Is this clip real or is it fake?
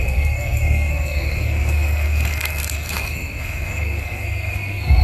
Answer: fake